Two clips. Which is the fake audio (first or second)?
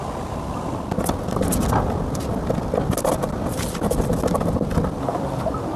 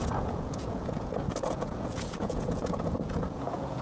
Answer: second